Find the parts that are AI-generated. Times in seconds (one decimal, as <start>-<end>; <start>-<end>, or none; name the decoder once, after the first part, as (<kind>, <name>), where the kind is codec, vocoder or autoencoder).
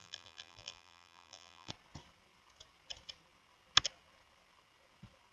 0.0-1.7 (vocoder, BigVGAN v2)